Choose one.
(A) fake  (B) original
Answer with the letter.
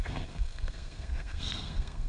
A